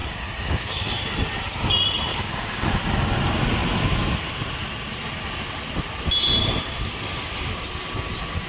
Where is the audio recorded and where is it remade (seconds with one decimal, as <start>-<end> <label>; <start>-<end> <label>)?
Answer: 0.0-0.9 remade; 0.9-2.1 recorded; 2.1-2.7 remade; 2.7-8.5 recorded